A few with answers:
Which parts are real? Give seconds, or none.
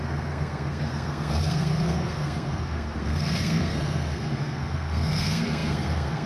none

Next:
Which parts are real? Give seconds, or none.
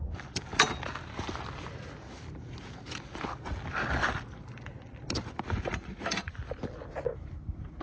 0.0-6.4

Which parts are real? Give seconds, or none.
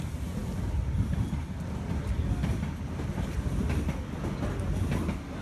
0.0-5.4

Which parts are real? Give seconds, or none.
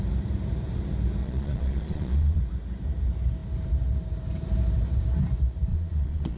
0.0-1.2; 2.4-5.7